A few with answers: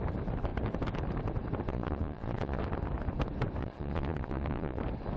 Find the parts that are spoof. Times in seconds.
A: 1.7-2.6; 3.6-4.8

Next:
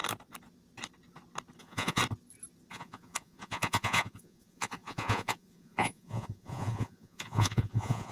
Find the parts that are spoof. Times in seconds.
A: 1.6-2.0; 2.7-8.1

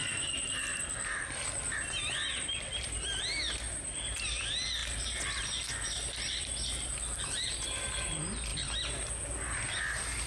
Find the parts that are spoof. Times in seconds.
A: none